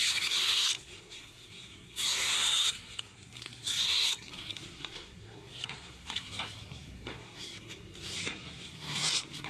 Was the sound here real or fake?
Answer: fake